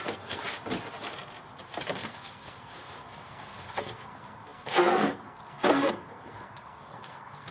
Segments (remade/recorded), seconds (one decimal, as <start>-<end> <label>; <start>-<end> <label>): 0.0-0.4 remade; 0.4-1.9 recorded; 1.9-7.5 remade